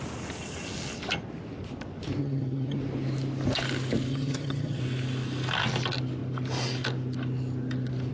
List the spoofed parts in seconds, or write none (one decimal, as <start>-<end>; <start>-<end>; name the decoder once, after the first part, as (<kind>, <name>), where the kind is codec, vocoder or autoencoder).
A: 2.2-2.8 (vocoder, HiFi-GAN); 4.1-4.8

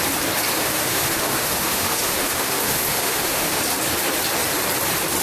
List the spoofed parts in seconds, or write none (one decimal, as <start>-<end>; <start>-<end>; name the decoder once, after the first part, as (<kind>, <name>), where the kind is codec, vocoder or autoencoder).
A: 0.5-3.6 (autoencoder, DAC-VAE)